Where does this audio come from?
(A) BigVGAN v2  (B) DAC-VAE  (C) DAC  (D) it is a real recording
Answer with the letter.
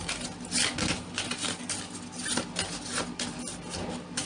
D